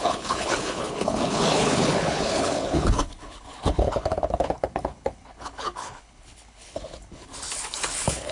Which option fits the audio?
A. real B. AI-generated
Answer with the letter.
B